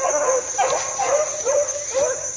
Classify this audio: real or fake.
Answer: real